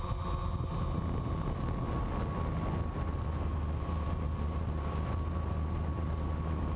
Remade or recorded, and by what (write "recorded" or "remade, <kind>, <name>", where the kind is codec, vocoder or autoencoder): recorded